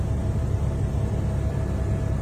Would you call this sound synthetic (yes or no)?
no